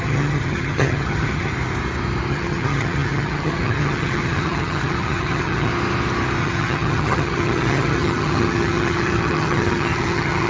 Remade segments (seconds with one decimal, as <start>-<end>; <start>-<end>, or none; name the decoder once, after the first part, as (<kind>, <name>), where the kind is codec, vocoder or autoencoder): 0.0-1.5 (vocoder, HiFi-GAN); 2.3-5.7; 6.4-10.5